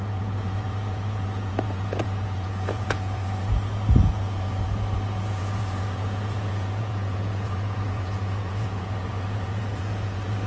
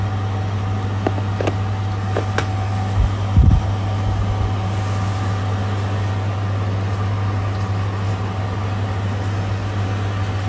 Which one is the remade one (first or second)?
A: first